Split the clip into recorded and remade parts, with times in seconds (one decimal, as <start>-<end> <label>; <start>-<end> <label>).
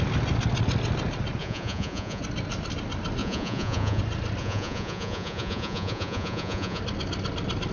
0.0-1.4 recorded; 1.4-2.2 remade; 2.2-3.2 recorded; 3.2-4.0 remade; 4.0-4.4 recorded; 4.4-6.8 remade; 6.8-7.7 recorded